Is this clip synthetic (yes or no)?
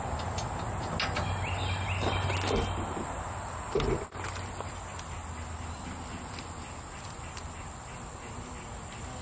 no